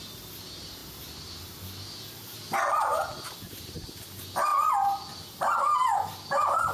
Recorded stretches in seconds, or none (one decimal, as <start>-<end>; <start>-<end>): 0.0-6.7